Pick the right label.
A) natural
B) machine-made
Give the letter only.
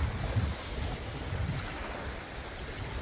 A